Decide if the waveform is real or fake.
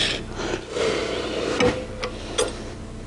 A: real